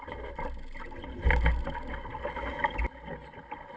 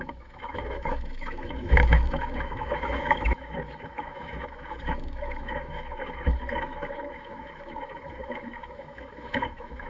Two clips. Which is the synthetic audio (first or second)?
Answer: second